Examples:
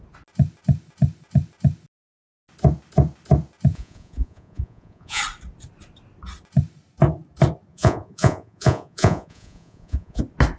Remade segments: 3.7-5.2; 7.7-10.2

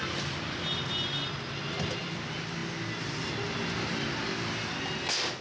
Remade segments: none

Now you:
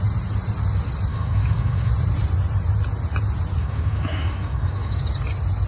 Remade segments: 1.1-1.9; 3.6-5.0